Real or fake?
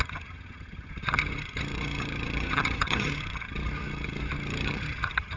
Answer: fake